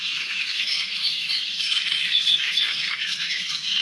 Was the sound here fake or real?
fake